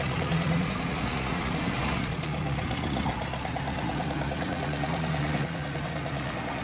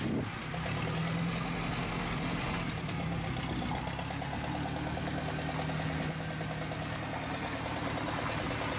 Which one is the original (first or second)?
second